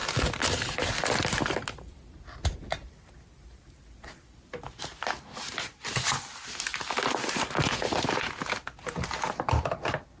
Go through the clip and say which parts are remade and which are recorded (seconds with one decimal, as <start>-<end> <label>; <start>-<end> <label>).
0.0-10.2 recorded